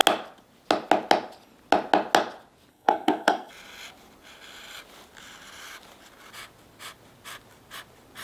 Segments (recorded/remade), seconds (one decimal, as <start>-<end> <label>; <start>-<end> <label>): 0.0-2.7 recorded; 2.7-3.5 remade; 3.5-8.2 recorded